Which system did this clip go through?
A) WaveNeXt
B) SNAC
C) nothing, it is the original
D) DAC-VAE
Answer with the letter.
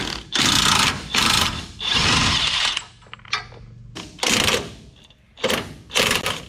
C